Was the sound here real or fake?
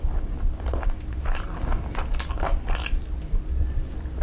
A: real